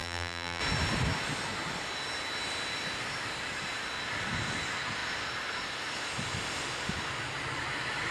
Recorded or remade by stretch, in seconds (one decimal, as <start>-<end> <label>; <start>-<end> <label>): 0.0-0.6 remade; 0.6-8.1 recorded